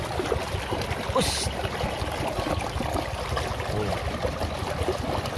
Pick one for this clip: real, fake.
real